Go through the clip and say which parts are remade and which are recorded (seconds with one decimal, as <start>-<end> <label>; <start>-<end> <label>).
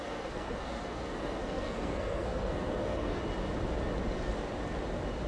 0.0-3.2 remade; 3.2-5.3 recorded